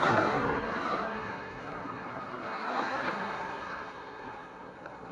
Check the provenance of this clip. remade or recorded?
remade